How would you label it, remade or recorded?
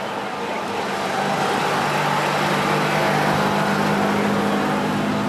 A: recorded